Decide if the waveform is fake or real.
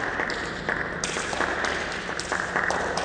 real